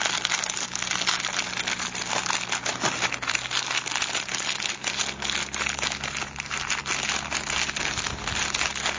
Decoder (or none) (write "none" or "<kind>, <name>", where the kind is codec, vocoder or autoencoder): none